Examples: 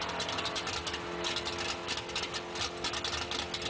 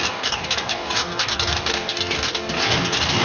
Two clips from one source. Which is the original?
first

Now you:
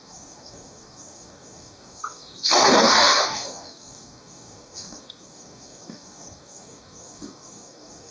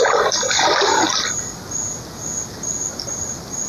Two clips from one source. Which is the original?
second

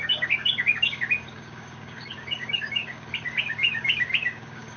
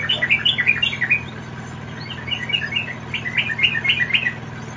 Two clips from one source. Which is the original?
second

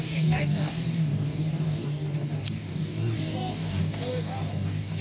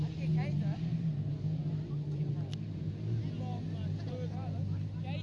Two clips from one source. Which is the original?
second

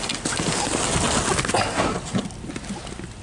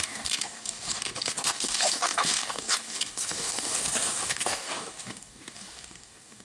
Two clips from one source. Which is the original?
first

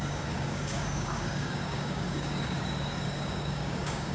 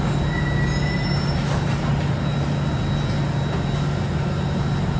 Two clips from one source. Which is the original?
second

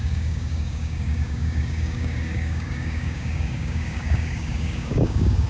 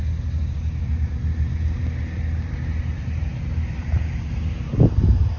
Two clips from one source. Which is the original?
second